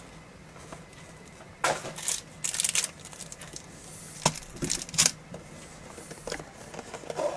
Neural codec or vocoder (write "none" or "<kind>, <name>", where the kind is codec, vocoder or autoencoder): none